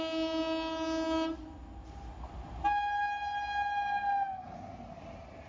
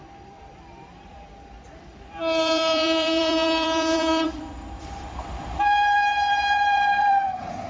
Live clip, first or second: first